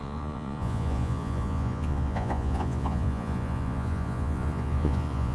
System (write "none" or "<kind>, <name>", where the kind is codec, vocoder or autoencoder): vocoder, Vocos